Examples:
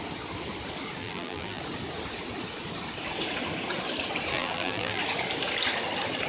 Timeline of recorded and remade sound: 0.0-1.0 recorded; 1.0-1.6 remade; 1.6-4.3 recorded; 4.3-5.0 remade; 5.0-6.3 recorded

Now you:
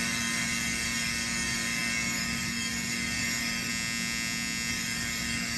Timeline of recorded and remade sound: 0.0-3.7 remade; 3.7-4.7 recorded; 4.7-5.6 remade

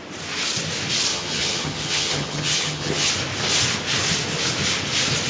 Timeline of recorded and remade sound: 0.0-1.1 recorded; 1.1-3.1 remade; 3.1-5.3 recorded